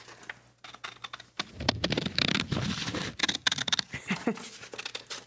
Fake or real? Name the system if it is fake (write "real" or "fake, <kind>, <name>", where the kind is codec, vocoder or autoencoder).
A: real